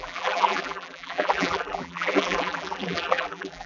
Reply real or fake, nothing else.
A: fake